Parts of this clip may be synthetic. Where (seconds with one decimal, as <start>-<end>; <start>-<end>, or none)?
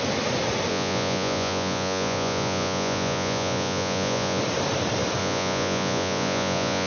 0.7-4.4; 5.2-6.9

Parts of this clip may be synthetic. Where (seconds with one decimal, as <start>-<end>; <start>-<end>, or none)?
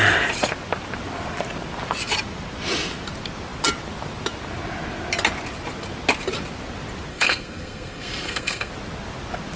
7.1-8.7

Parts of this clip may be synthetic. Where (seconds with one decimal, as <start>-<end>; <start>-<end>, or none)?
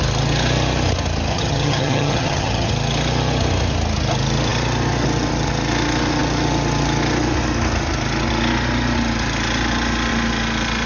1.3-2.7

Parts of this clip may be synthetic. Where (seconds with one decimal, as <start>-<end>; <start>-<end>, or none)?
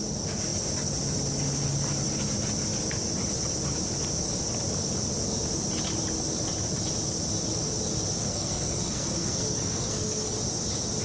8.2-10.4